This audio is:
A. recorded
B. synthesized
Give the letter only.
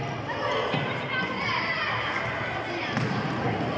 A